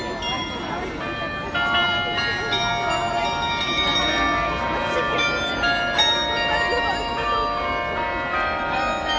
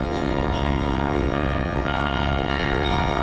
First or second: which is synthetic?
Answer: second